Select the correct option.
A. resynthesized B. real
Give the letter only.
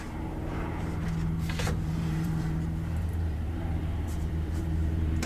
A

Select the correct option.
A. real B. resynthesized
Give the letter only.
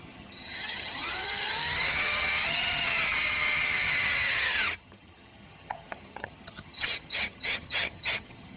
B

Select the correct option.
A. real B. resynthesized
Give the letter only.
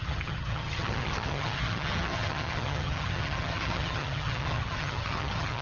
B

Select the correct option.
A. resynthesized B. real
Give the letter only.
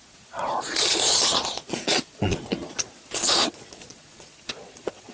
A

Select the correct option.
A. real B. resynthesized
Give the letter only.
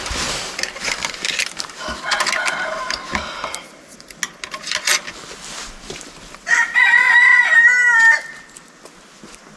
A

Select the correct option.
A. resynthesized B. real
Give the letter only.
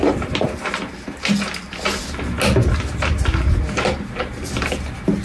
B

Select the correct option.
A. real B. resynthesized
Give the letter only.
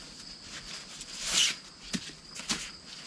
A